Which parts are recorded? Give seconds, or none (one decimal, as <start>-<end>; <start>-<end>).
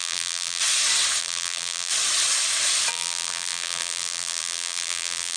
0.6-1.2; 1.9-2.9